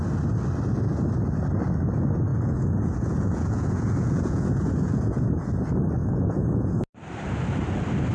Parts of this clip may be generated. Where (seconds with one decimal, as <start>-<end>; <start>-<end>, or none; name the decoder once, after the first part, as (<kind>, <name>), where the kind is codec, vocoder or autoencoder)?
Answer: 2.3-5.5 (vocoder, Vocos); 6.0-6.8